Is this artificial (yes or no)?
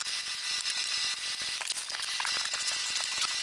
no